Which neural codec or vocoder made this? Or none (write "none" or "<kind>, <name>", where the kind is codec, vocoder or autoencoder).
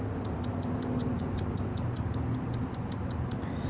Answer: none